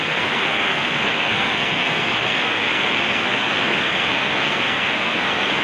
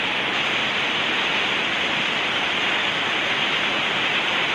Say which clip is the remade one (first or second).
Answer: first